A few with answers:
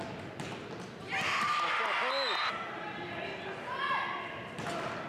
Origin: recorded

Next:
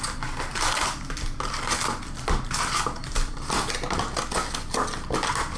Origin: recorded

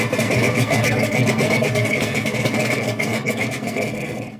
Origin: remade